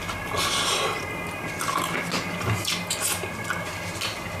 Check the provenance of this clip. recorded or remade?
recorded